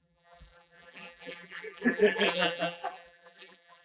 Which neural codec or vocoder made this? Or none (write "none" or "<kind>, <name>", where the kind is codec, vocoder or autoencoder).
vocoder, BigVGAN v2